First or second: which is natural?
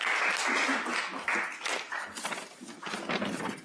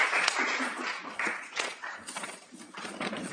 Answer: first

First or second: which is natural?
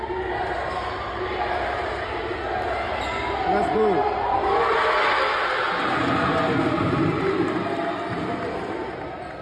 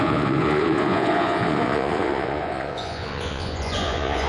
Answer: first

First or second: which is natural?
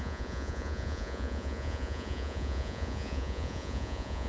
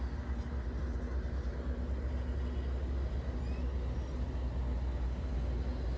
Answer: second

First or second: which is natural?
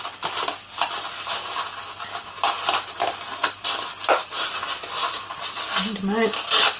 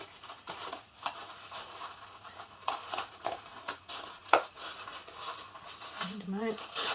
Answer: first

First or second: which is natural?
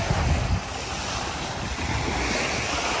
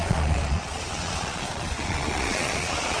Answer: first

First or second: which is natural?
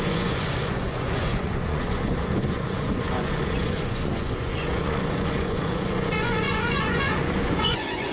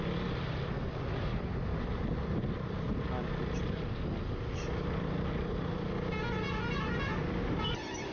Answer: second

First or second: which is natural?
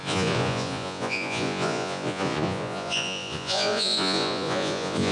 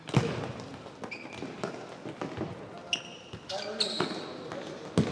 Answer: second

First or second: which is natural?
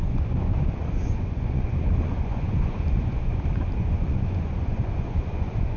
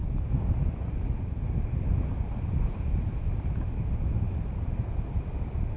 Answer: second